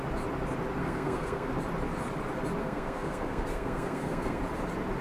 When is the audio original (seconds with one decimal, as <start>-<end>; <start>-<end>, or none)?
0.0-0.8; 1.5-2.6; 4.4-5.0